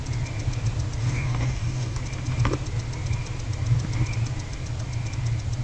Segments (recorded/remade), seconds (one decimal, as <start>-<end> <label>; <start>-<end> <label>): 0.0-1.0 recorded; 1.0-2.0 remade; 2.0-5.6 recorded